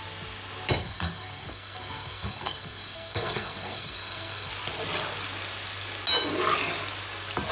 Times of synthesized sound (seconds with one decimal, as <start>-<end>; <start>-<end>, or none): 0.8-4.5